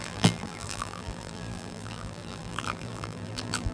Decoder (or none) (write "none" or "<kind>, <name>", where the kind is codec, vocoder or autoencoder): vocoder, BigVGAN v2